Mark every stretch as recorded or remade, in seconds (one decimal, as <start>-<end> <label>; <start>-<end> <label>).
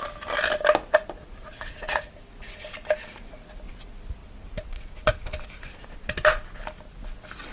0.0-1.2 recorded; 1.2-2.2 remade; 2.2-4.2 recorded; 4.2-5.1 remade; 5.1-7.5 recorded